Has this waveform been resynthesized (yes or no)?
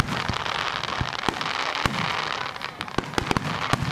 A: no